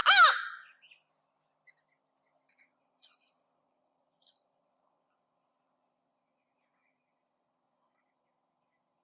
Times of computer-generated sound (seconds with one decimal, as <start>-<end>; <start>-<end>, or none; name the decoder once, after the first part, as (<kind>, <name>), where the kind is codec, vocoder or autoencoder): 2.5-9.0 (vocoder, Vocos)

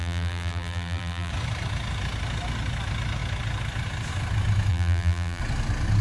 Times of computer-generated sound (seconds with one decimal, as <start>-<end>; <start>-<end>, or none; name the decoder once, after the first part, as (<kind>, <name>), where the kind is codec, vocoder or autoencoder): 0.0-1.3 (vocoder, BigVGAN v2); 4.7-5.4

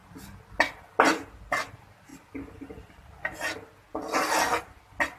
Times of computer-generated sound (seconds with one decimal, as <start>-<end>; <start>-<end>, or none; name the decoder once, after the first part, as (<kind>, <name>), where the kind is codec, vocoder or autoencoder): none

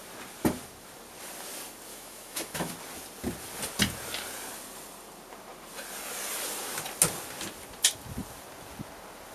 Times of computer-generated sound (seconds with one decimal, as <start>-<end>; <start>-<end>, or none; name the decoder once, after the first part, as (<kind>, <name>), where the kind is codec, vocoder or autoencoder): 1.9-2.7 (autoencoder, DAC-VAE)